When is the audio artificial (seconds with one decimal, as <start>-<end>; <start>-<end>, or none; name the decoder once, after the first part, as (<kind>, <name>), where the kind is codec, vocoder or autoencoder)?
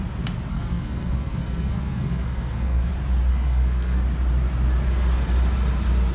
0.5-2.9 (codec, SNAC); 3.3-4.0